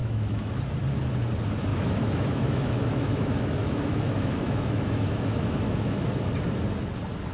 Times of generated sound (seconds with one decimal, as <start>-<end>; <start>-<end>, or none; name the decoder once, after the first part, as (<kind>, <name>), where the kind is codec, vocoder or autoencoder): 0.0-0.6 (autoencoder, DAC-VAE); 1.7-6.1